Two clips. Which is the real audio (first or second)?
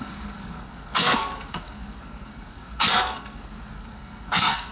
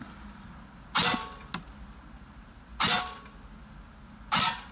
second